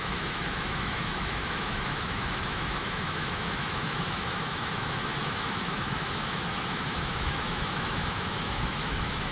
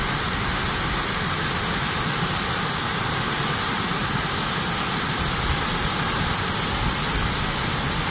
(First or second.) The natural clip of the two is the second